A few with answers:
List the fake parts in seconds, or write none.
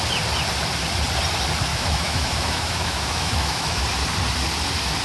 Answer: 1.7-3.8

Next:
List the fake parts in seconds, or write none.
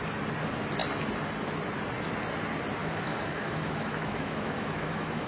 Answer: 2.8-5.3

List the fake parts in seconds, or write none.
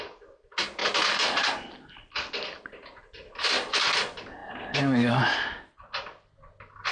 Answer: none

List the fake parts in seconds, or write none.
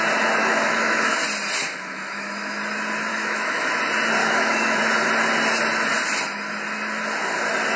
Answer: 0.4-1.2; 1.6-2.6; 3.1-3.7; 4.2-4.8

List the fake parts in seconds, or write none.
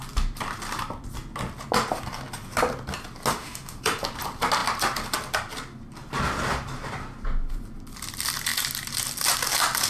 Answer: 3.3-3.8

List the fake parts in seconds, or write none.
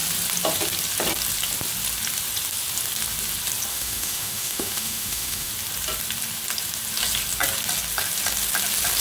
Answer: 3.7-5.5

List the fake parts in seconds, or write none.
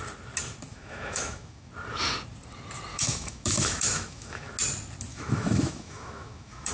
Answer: 0.7-1.7; 2.9-4.5; 5.1-6.7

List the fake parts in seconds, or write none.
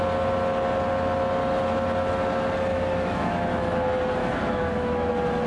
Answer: 2.7-3.6; 4.2-5.1